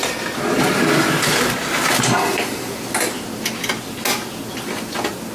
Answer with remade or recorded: recorded